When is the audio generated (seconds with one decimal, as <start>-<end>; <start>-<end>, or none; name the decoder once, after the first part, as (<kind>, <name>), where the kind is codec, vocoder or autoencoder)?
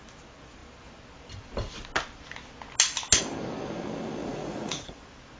4.2-4.9 (vocoder, Vocos)